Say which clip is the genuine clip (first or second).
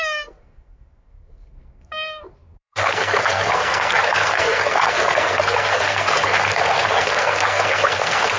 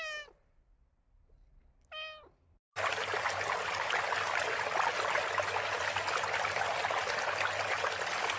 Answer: second